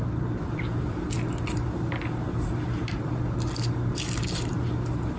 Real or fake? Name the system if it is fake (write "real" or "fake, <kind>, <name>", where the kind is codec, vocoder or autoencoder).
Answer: real